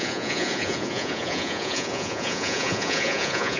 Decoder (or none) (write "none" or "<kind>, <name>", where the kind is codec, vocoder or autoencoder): vocoder, Vocos